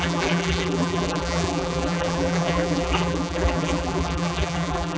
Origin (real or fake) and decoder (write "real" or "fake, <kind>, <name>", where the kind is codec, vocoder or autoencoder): fake, vocoder, BigVGAN v2